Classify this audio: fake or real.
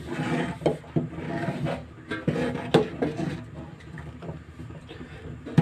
real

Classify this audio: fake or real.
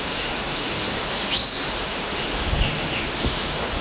fake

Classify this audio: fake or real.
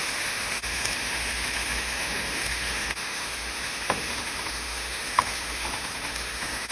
fake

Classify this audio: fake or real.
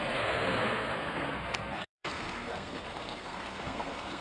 fake